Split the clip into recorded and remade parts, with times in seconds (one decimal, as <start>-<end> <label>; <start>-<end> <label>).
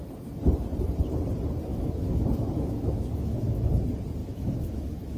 0.0-1.7 recorded; 1.7-3.7 remade; 3.7-4.2 recorded; 4.2-5.2 remade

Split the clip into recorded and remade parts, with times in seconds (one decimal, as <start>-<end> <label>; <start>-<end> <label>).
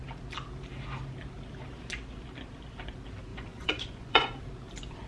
0.0-3.3 recorded; 3.3-4.4 remade; 4.4-5.1 recorded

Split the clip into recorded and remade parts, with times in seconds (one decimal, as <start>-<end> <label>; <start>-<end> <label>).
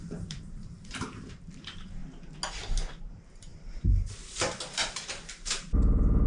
0.0-2.0 remade; 2.0-3.1 recorded; 3.1-6.3 remade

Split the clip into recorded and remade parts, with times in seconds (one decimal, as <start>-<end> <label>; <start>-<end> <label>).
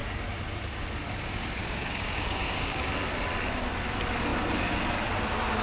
0.0-1.6 recorded; 1.6-2.9 remade; 2.9-5.6 recorded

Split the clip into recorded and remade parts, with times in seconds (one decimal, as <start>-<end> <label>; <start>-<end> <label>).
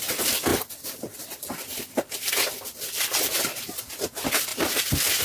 0.0-0.5 recorded; 0.5-3.6 remade; 3.6-4.5 recorded; 4.5-5.2 remade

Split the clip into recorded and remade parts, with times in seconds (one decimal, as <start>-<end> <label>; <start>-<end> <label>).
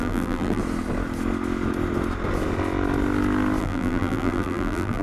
0.0-0.6 remade; 0.6-3.6 recorded; 3.6-5.0 remade